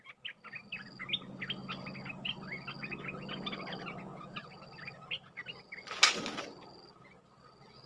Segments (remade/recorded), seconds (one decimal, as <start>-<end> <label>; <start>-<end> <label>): 0.0-7.9 recorded